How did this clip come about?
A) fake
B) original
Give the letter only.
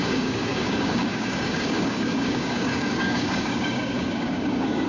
A